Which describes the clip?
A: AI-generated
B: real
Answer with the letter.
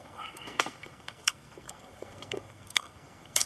A